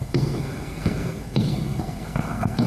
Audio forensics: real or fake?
fake